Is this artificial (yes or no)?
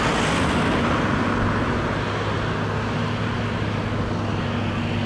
no